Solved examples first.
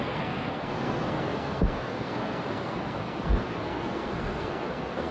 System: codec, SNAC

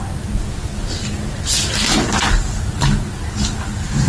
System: none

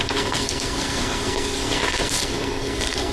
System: codec, SNAC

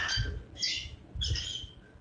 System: none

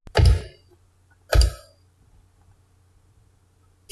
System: none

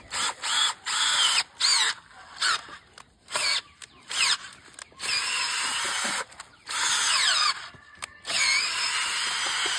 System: none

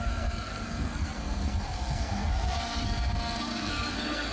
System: codec, SNAC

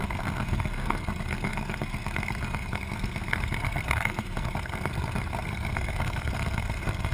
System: codec, SNAC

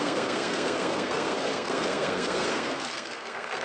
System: codec, SNAC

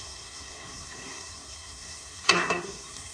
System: codec, SNAC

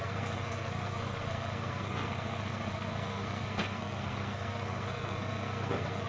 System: codec, SNAC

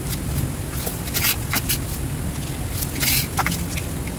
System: none